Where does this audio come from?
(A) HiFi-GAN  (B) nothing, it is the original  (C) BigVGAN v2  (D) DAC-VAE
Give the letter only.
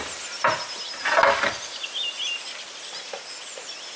B